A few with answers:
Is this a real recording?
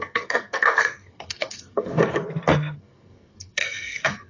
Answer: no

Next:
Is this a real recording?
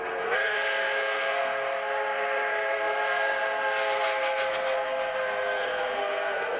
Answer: no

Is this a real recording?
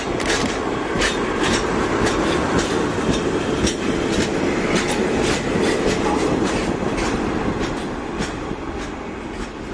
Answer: yes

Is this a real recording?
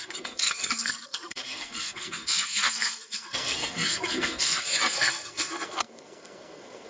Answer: no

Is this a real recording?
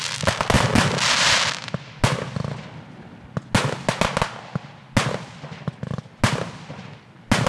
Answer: yes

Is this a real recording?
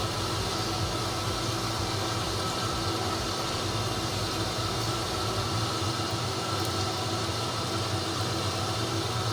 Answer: yes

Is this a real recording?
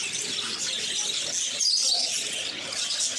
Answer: yes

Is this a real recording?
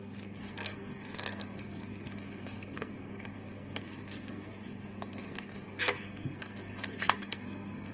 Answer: no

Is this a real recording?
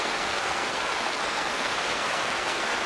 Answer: no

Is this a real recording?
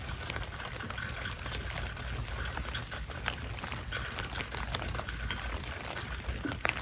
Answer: yes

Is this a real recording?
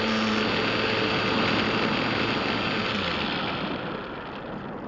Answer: yes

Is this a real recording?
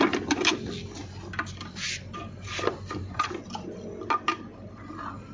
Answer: yes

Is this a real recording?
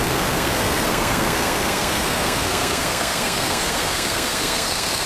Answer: no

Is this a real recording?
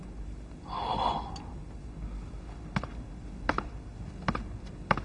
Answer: yes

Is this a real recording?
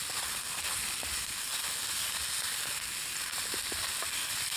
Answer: yes